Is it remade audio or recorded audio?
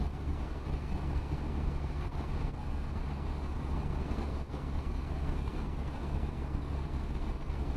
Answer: remade